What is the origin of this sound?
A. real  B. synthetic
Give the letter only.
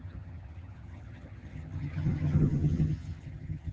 B